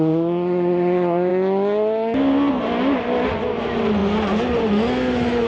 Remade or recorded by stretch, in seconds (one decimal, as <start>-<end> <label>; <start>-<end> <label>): 0.0-5.5 recorded